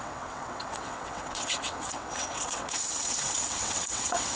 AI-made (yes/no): yes